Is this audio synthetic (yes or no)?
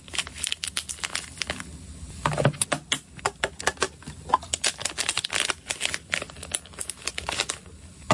no